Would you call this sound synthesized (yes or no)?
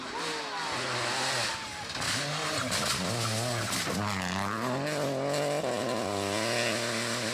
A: no